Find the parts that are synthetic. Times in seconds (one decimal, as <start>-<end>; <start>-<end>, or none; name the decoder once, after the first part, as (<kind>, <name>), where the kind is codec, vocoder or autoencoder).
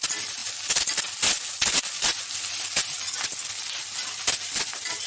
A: none